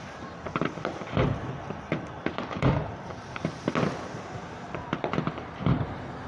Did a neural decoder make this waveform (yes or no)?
no